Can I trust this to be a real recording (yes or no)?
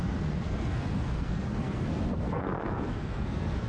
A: no